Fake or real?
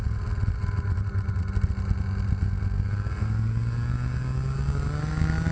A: real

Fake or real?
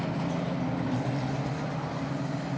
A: real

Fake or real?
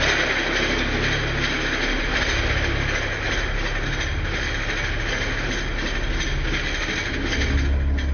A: real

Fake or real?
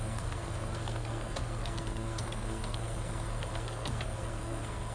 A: fake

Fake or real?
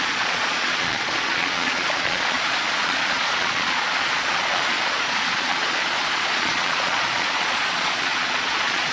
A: fake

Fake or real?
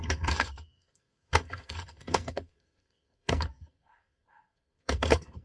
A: fake